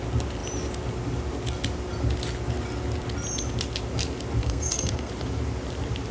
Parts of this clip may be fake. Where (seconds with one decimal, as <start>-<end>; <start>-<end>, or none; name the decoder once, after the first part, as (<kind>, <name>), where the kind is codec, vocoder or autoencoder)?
4.4-5.1 (codec, SNAC)